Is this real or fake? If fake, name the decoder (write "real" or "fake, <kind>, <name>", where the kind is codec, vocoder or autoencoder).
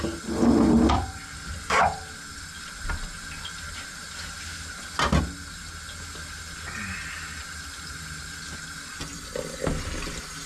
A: real